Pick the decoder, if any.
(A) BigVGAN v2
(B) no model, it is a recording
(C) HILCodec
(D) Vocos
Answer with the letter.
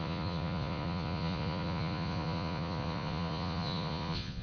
D